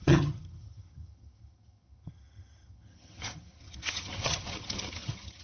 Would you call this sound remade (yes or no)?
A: yes